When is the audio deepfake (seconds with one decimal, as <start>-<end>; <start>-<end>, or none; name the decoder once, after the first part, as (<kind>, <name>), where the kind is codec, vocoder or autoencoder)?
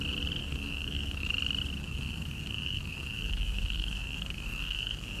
0.4-1.3 (codec, SNAC); 1.8-5.2